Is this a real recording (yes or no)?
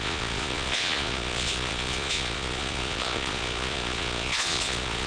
no